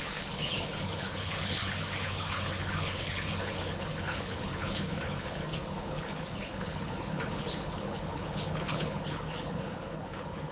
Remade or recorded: remade